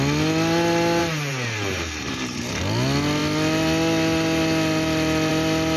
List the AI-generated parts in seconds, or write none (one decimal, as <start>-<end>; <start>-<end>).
1.0-2.6